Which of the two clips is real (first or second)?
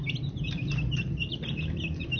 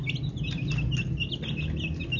second